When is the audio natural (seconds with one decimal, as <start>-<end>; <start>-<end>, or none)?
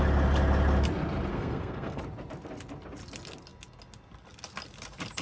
0.0-1.3; 2.0-5.2